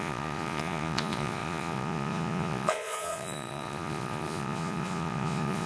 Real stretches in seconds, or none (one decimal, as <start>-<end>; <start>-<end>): none